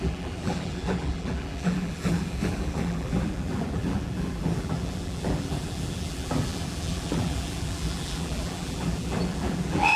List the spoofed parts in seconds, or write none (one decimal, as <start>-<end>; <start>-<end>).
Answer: 0.0-10.0